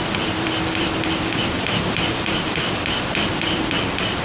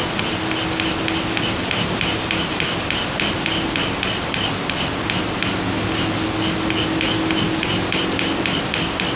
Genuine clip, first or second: second